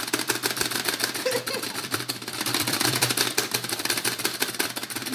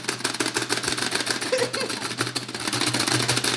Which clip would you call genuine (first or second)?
second